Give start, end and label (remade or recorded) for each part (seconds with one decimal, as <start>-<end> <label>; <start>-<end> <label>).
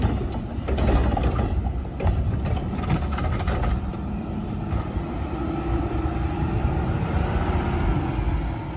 0.0-2.6 recorded; 2.6-7.5 remade; 7.5-8.8 recorded